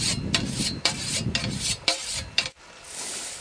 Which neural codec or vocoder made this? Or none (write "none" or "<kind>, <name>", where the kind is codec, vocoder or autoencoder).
none